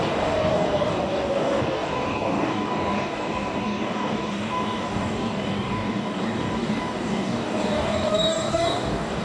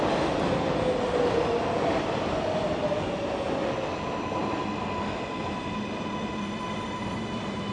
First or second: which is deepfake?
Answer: first